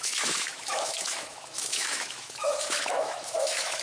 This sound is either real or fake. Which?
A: fake